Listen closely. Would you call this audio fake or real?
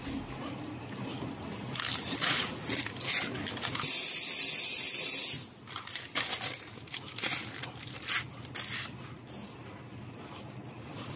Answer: real